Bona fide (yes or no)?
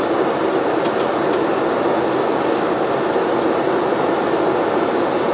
yes